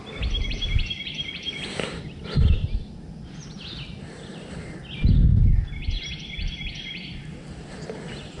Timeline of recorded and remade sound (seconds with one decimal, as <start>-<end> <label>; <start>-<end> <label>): 0.0-6.1 recorded; 6.1-7.7 remade; 7.7-8.4 recorded